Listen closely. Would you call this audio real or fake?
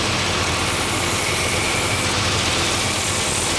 real